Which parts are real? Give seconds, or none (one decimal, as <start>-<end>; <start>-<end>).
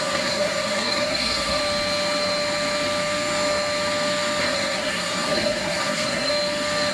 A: 1.6-4.4; 6.3-6.9